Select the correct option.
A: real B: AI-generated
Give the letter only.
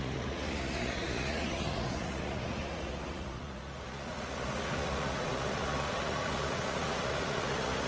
B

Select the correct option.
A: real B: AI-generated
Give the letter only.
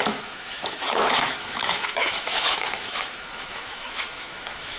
B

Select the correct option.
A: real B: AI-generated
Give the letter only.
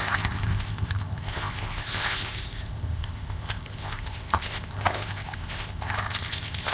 B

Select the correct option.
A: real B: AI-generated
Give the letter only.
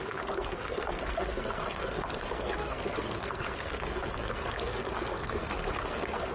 B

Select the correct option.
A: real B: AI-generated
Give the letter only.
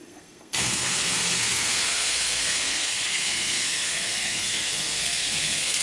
B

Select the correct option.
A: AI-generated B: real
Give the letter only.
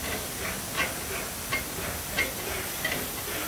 B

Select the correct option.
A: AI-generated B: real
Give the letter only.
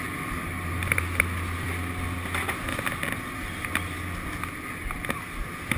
B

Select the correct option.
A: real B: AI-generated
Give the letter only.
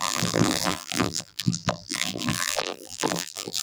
B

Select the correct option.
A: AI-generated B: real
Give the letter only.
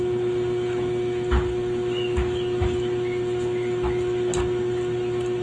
B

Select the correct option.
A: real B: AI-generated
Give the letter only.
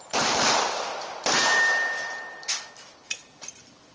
B